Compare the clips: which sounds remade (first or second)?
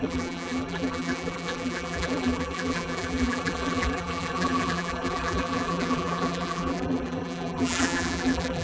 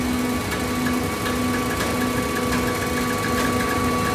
first